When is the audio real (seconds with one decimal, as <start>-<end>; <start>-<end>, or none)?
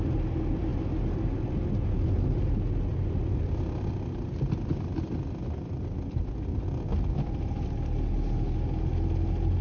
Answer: 0.0-9.6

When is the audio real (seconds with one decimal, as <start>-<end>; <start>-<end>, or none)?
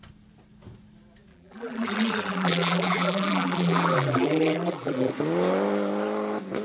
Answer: 0.0-1.3; 5.1-6.6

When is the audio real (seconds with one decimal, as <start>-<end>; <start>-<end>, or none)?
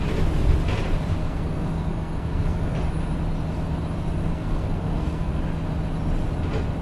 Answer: 0.0-1.2; 2.8-4.2; 5.4-6.8